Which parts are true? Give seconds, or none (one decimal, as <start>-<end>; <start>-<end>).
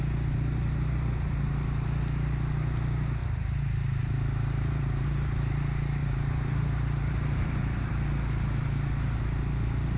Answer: 0.0-3.2; 5.5-6.0; 7.9-10.0